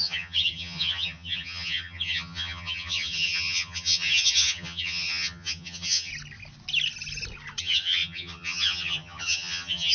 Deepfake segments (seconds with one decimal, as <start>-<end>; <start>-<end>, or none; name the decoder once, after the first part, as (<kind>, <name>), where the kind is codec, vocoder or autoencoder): 0.0-6.1 (vocoder, HiFi-GAN); 7.6-9.9